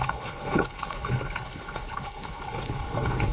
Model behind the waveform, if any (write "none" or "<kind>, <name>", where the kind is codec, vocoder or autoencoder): codec, HILCodec